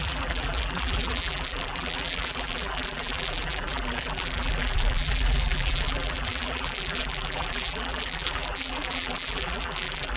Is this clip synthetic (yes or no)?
yes